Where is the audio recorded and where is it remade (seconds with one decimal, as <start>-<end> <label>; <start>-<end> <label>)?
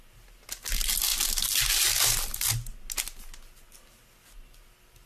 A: 0.0-5.1 recorded